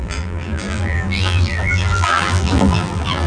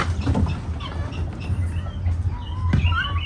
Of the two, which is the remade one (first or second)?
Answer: first